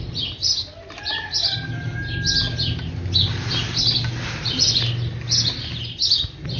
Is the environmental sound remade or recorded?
recorded